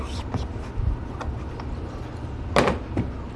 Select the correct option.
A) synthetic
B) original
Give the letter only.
B